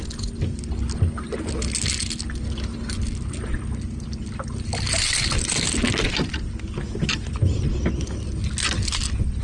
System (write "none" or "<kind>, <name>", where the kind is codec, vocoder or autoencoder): none